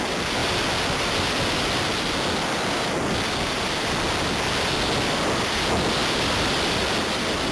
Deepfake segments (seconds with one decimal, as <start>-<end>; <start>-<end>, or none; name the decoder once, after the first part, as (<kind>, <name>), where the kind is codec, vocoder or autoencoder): none